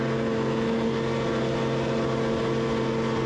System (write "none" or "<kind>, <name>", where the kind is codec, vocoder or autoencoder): none